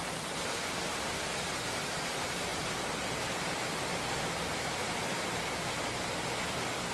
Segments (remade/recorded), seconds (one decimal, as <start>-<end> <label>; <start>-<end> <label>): 0.0-6.9 recorded